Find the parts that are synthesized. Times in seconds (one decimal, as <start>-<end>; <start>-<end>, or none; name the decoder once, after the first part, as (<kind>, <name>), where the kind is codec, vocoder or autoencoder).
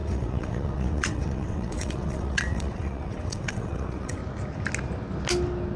0.0-4.2 (vocoder, WaveNeXt)